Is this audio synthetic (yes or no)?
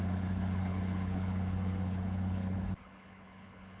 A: yes